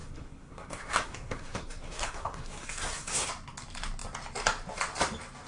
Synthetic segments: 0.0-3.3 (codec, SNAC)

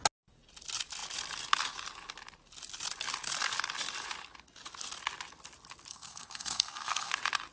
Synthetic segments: 5.9-7.1 (codec, SNAC)